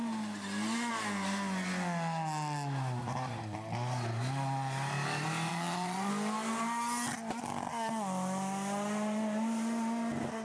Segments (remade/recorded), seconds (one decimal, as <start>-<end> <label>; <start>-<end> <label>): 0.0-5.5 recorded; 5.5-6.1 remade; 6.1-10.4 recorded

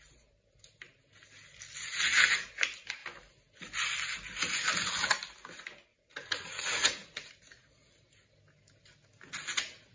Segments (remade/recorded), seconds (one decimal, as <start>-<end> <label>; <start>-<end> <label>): 0.0-5.9 recorded; 5.9-7.3 remade; 7.3-9.9 recorded

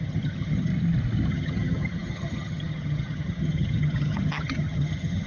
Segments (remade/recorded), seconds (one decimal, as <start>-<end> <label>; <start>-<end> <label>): 0.0-0.7 remade; 0.7-1.3 recorded; 1.3-5.3 remade

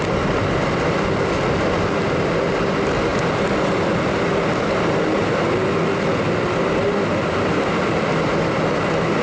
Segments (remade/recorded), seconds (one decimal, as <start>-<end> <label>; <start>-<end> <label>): 0.0-3.1 recorded; 3.1-5.5 remade; 5.5-9.2 recorded

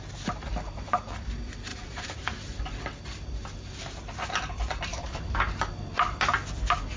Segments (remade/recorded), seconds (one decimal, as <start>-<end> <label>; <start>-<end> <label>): 0.0-1.7 recorded; 1.7-2.6 remade; 2.6-4.9 recorded; 4.9-5.5 remade; 5.5-7.0 recorded

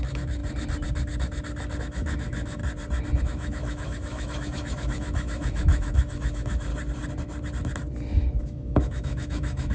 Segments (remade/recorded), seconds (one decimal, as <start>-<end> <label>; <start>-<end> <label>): 0.0-0.4 remade; 0.4-1.8 recorded; 1.8-2.6 remade; 2.6-3.2 recorded; 3.2-6.7 remade; 6.7-8.4 recorded; 8.4-9.7 remade

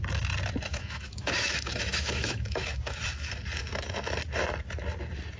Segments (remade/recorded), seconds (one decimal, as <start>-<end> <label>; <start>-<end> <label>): 0.0-0.7 recorded; 0.7-3.0 remade; 3.0-5.4 recorded